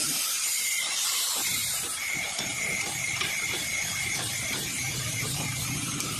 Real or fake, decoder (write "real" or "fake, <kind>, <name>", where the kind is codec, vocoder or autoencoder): fake, vocoder, BigVGAN v2